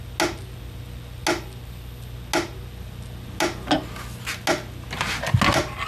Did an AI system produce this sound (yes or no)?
no